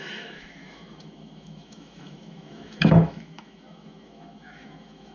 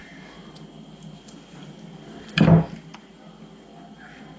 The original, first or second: second